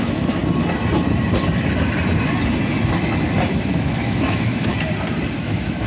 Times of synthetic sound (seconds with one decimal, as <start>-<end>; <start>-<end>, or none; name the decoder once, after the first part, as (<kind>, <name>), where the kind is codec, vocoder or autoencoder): 0.0-0.4 (autoencoder, DAC-VAE); 3.5-4.7; 5.4-5.9